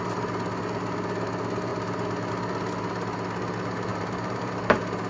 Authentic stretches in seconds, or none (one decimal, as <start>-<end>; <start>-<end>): 0.0-3.9; 4.5-5.1